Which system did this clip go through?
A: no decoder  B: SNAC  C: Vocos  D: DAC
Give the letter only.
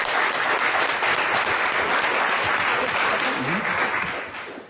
A